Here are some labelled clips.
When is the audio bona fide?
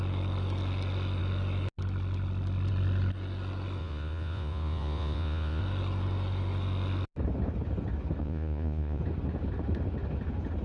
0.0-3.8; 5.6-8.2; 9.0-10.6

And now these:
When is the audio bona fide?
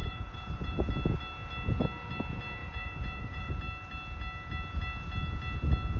0.9-2.6; 3.5-6.0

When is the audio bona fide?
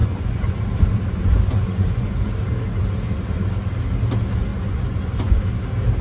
0.6-1.2; 2.3-4.5; 5.4-6.0